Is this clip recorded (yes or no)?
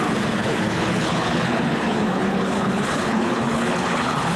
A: no